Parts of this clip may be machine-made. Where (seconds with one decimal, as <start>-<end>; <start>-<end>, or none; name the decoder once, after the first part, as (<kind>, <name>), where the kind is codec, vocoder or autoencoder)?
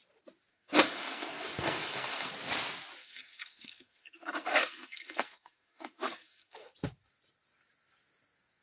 0.5-2.3 (codec, SNAC); 3.0-6.7